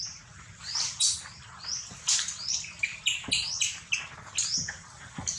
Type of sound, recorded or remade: recorded